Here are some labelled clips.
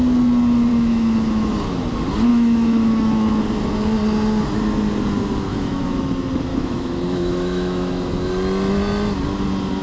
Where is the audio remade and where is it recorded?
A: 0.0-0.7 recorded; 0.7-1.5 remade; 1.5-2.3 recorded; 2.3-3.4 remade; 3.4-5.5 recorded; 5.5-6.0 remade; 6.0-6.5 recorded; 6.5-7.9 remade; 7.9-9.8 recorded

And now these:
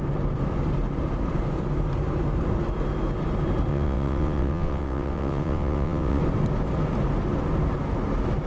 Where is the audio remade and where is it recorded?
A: 0.0-3.7 recorded; 3.7-6.2 remade; 6.2-8.5 recorded